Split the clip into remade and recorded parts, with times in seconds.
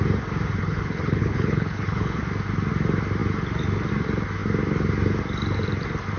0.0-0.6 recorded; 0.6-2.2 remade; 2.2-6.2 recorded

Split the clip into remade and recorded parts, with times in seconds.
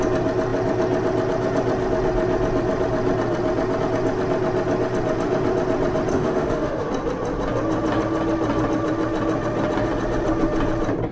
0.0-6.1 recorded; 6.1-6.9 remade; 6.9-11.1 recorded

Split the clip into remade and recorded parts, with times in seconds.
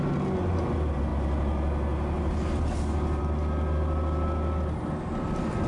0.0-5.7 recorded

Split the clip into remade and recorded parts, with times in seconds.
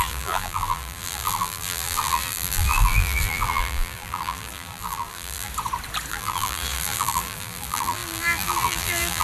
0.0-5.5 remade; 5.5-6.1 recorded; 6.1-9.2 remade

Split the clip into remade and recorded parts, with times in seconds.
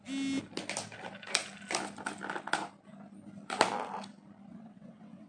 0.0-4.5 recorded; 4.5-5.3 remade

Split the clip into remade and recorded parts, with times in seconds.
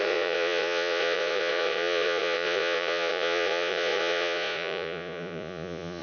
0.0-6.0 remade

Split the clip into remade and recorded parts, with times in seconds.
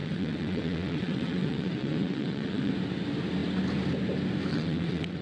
0.0-2.7 remade; 2.7-4.5 recorded; 4.5-5.2 remade